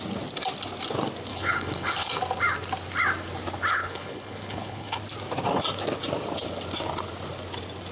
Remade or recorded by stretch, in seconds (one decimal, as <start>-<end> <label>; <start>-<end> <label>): 0.0-1.3 recorded; 1.3-2.1 remade; 2.1-3.7 recorded; 3.7-5.0 remade; 5.0-7.9 recorded